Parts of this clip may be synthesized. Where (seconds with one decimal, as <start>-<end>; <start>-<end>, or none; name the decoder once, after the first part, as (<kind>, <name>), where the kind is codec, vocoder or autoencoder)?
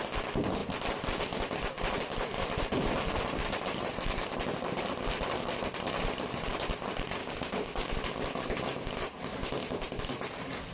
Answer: 7.2-7.9 (codec, DAC)